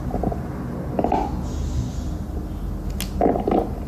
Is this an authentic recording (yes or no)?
yes